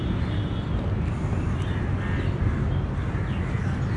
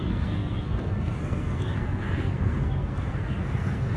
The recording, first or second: first